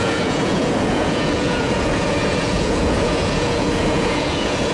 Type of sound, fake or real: fake